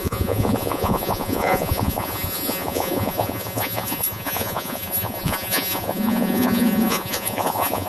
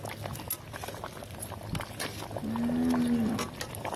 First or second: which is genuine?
second